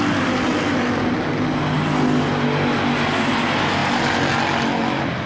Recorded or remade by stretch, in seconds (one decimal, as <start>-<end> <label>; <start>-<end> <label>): 0.0-5.3 recorded